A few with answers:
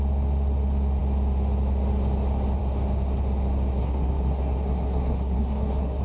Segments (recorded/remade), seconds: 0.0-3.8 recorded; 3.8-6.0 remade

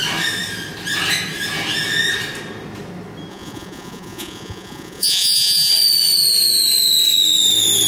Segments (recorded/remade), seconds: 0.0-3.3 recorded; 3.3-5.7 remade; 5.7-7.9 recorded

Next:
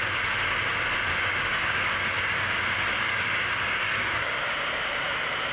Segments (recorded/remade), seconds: 0.0-1.1 recorded; 1.1-4.4 remade; 4.4-5.5 recorded

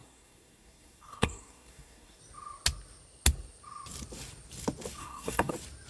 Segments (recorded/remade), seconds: 0.0-2.2 remade; 2.2-5.0 recorded; 5.0-5.5 remade; 5.5-5.9 recorded